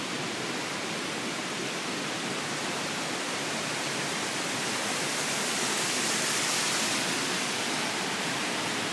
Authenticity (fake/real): fake